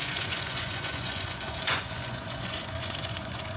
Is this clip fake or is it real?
fake